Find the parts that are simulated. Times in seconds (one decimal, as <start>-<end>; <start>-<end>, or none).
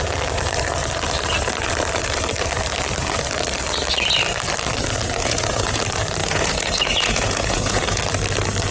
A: 5.2-5.8; 6.2-8.0